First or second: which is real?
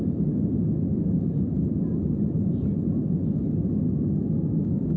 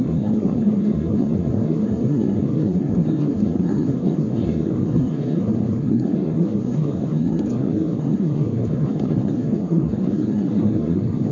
first